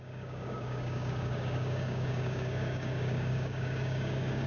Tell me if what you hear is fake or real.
fake